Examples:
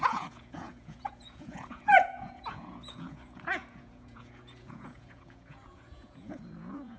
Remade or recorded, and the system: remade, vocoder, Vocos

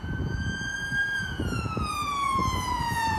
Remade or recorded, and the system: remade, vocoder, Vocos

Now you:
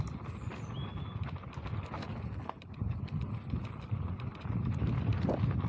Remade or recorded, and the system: recorded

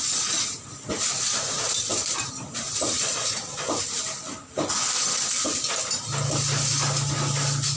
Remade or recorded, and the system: recorded